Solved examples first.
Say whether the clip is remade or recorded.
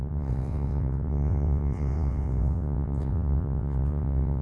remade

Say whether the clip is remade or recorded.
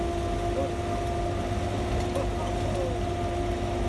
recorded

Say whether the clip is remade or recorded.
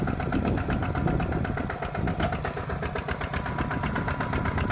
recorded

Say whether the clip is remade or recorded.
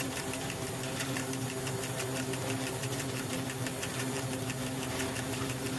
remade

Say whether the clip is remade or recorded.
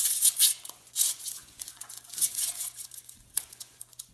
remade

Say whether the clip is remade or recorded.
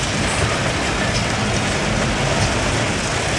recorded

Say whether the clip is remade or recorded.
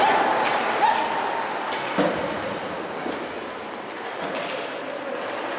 recorded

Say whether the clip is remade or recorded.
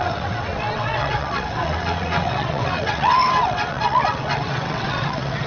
remade